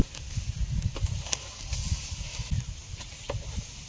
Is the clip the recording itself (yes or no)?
yes